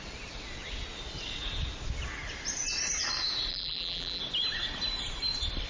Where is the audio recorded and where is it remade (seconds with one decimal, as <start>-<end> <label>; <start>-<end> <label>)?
0.0-3.5 recorded; 3.5-4.2 remade; 4.2-5.7 recorded